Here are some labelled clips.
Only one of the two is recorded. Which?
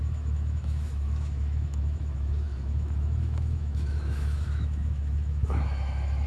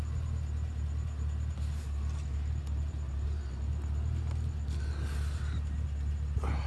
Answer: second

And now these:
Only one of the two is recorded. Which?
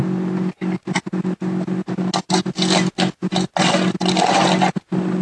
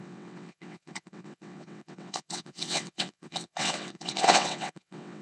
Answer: first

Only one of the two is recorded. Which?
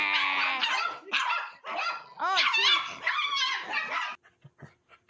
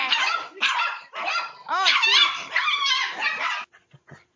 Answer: first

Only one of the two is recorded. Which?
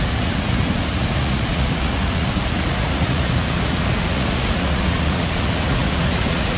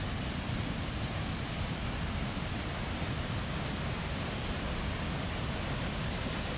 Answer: second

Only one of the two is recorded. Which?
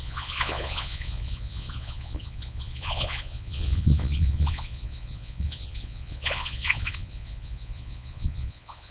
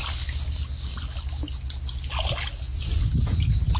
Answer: second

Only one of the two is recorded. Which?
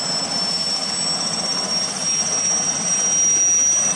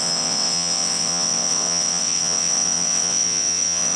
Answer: first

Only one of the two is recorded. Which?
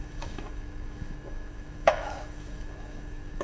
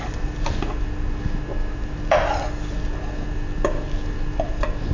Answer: second